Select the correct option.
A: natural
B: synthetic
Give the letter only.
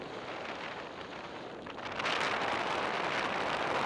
B